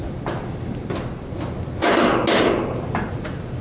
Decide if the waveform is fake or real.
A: real